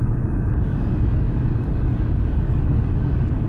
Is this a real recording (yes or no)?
no